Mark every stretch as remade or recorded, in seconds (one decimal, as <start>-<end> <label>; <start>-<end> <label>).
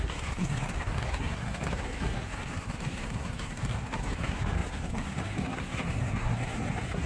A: 0.0-7.1 remade